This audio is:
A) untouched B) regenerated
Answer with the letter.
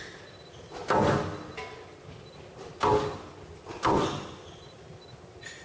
A